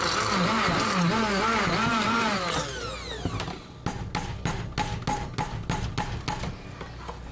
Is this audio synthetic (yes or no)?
no